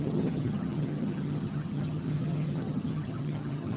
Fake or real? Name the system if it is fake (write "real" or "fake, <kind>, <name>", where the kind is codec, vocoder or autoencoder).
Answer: fake, vocoder, HiFi-GAN